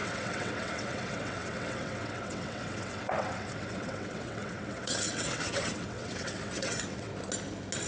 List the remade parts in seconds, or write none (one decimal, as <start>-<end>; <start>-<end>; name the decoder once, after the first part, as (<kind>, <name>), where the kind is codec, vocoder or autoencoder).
0.0-7.1 (vocoder, WaveNeXt)